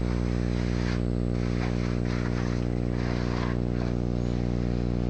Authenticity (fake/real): real